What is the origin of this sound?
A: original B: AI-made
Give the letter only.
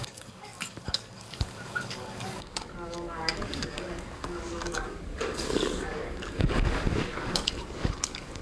B